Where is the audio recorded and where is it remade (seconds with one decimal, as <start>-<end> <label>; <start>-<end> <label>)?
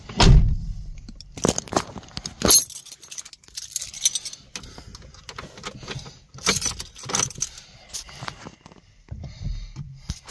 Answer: 0.0-10.3 recorded